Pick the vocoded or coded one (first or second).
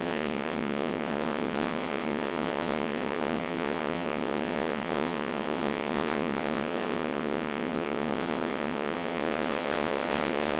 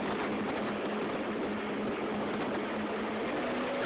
first